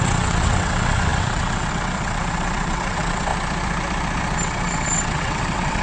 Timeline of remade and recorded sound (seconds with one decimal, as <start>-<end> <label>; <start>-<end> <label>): 0.0-3.3 remade; 3.3-4.4 recorded; 4.4-5.8 remade